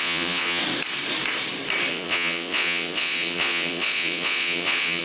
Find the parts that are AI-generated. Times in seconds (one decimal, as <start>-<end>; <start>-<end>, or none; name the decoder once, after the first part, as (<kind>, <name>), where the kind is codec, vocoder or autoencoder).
0.0-0.6 (vocoder, Vocos); 1.9-5.0